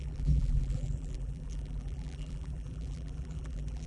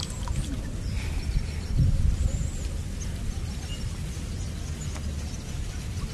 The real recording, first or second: second